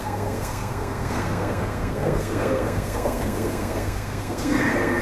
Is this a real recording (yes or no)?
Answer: no